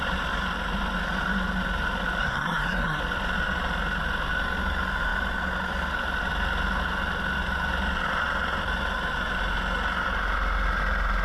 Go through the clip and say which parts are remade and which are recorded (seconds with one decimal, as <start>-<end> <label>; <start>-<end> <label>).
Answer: 0.0-2.2 recorded; 2.2-3.0 remade; 3.0-11.2 recorded

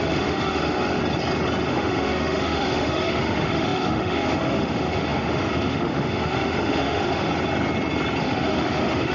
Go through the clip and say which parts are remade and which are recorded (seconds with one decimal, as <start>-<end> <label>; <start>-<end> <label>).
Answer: 0.0-1.0 remade; 1.0-1.7 recorded; 1.7-7.3 remade; 7.3-8.2 recorded; 8.2-9.1 remade

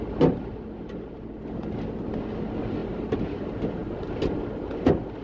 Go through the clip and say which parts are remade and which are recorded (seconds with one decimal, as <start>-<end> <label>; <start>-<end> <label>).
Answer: 0.0-5.2 recorded

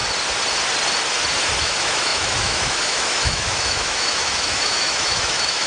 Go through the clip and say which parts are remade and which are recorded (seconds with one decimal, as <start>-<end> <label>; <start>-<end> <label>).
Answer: 0.0-1.6 recorded; 1.6-5.7 remade

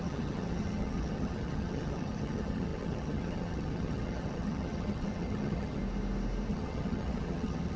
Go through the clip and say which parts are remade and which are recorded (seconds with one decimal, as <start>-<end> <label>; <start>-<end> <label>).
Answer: 0.0-5.8 remade; 5.8-6.5 recorded; 6.5-7.8 remade

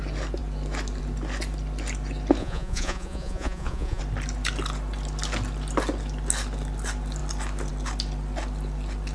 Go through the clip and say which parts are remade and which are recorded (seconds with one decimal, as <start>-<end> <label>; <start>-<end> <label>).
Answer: 0.0-2.4 recorded; 2.4-4.0 remade; 4.0-9.1 recorded